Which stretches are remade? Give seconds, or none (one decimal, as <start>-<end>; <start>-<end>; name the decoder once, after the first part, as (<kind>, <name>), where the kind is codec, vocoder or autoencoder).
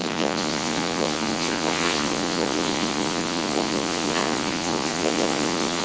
0.0-5.8 (vocoder, Vocos)